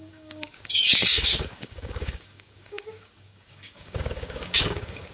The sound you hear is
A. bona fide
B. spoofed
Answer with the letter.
B